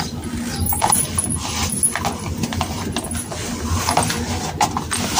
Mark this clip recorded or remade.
recorded